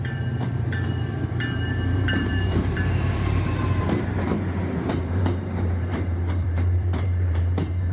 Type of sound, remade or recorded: remade